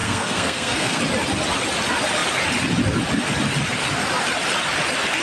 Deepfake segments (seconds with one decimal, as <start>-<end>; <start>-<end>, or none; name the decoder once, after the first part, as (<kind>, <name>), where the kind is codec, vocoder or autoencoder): 0.0-1.0 (codec, SNAC)